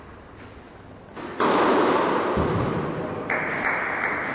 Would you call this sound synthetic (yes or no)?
no